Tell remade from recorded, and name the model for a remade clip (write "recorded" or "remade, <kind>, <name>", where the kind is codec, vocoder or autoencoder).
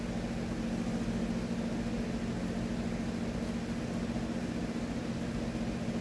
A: recorded